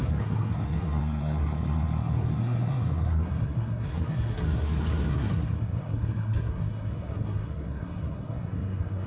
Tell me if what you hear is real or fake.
fake